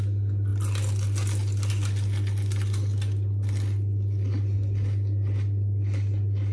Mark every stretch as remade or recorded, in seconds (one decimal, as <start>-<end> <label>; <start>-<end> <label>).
0.0-6.5 recorded